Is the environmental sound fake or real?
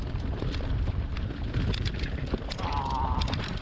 real